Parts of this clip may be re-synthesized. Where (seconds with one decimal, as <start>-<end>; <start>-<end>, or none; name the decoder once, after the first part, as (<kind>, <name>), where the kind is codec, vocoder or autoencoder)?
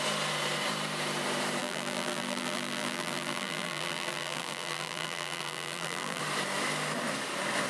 1.6-6.2 (vocoder, BigVGAN v2)